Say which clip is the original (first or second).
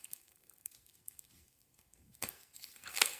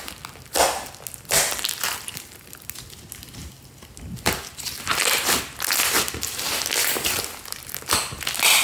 second